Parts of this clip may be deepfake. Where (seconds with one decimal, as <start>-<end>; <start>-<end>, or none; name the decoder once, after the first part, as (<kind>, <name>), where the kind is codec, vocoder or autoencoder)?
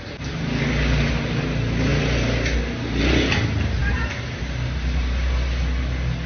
none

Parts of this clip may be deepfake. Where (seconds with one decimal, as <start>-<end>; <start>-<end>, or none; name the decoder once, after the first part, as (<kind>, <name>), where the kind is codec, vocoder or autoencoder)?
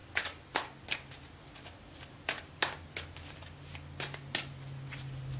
none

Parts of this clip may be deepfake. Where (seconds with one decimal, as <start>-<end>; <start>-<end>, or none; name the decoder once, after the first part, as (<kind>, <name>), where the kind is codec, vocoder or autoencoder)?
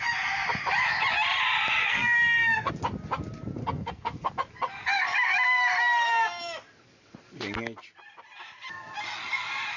1.8-2.7 (codec, SNAC); 3.6-4.3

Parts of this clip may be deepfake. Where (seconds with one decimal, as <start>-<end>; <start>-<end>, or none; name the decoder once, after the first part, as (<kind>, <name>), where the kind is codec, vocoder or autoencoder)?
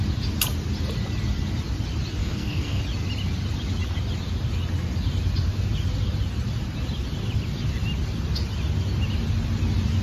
2.2-2.8 (codec, SNAC)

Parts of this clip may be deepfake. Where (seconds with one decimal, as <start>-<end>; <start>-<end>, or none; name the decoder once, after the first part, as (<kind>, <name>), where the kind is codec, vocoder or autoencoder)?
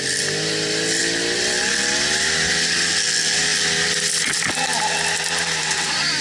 none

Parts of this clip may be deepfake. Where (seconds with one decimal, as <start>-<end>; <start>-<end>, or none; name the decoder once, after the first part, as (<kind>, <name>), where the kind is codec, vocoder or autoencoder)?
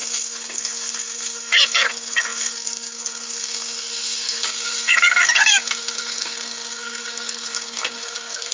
0.0-8.5 (codec, SNAC)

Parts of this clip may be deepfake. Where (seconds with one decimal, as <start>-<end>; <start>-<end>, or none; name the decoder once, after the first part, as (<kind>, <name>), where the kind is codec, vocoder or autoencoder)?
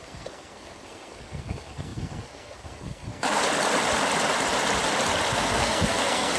0.0-3.4 (codec, SNAC); 5.3-6.4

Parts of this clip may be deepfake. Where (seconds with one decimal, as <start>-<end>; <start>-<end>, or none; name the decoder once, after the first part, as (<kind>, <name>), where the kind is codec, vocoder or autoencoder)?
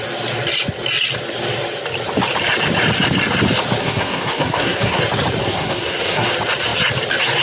3.8-5.0 (codec, SNAC); 5.4-6.3